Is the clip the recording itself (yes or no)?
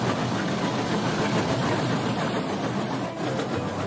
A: yes